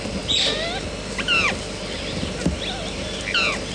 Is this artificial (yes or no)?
no